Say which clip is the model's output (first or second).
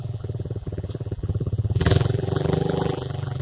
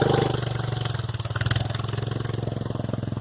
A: first